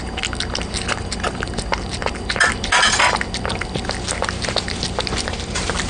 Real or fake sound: real